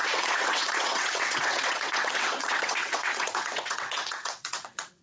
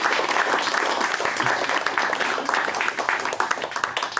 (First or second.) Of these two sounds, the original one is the second